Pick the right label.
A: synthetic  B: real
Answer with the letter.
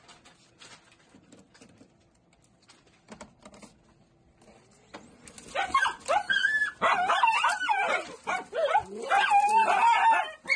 B